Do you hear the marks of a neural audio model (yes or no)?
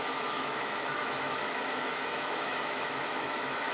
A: yes